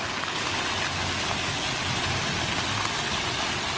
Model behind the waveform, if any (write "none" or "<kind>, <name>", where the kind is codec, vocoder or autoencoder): none